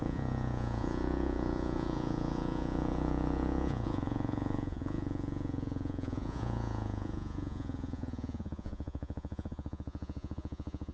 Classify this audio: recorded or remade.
remade